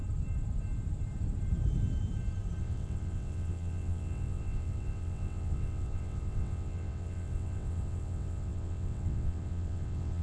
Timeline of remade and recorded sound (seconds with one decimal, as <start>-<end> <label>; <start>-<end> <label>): 0.0-2.6 recorded; 2.6-10.2 remade